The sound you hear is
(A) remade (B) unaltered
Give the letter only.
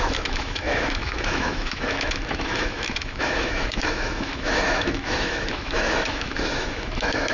A